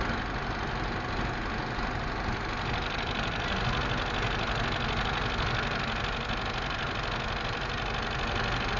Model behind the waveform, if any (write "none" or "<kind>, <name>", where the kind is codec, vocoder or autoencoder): none